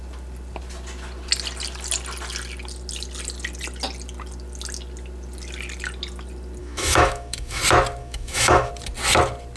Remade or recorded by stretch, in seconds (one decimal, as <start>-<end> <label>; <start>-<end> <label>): 0.0-6.6 recorded; 6.6-7.6 remade; 7.6-8.0 recorded; 8.0-8.7 remade; 8.7-9.6 recorded